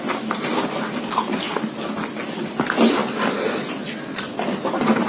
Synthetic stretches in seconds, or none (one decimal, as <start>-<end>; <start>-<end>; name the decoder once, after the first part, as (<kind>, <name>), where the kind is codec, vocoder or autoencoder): none